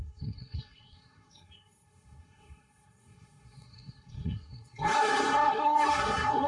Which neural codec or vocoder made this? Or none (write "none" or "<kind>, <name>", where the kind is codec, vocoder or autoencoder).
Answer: codec, SNAC